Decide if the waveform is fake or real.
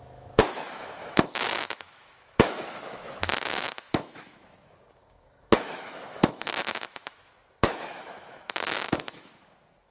fake